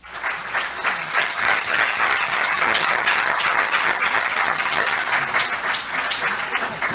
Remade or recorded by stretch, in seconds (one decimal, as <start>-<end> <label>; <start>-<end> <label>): 0.0-1.0 recorded; 1.0-5.1 remade; 5.1-6.9 recorded